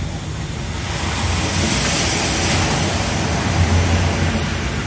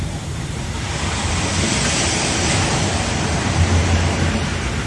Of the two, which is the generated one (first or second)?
second